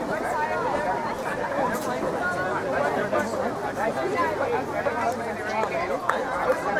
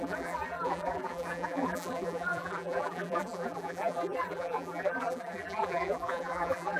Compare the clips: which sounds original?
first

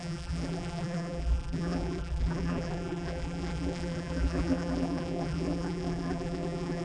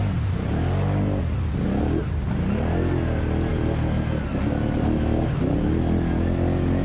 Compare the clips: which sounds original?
second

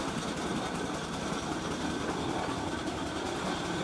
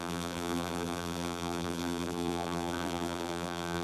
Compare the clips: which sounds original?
first